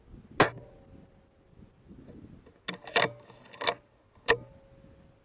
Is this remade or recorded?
recorded